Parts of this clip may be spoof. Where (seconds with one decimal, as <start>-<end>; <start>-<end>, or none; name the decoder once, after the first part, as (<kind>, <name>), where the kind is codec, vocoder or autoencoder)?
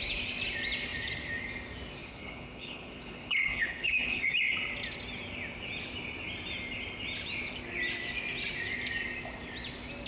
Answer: 2.0-4.2 (codec, HILCodec)